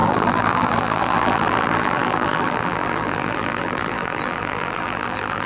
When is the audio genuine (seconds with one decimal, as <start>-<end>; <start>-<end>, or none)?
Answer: none